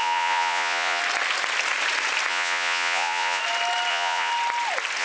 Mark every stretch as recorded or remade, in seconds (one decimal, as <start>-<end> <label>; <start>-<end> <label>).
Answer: 0.0-1.0 remade; 1.0-2.3 recorded; 2.3-3.4 remade; 3.4-3.9 recorded; 3.9-4.3 remade; 4.3-5.0 recorded